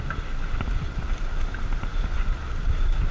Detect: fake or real real